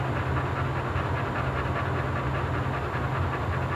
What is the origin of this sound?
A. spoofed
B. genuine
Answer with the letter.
B